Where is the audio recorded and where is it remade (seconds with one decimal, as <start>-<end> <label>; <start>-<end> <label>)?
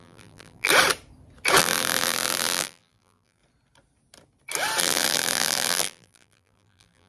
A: 0.0-0.7 remade; 0.7-1.6 recorded; 1.6-3.4 remade; 3.4-4.8 recorded; 4.8-7.1 remade